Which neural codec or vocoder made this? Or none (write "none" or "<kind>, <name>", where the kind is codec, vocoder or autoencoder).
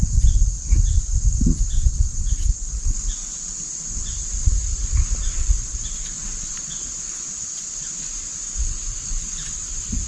none